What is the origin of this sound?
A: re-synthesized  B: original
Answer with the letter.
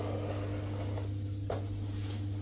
B